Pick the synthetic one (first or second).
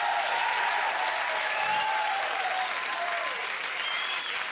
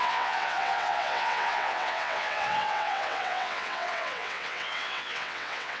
second